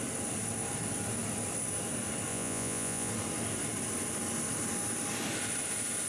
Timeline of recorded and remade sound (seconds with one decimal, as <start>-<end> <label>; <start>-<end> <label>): 0.0-2.3 recorded; 2.3-3.1 remade; 3.1-6.1 recorded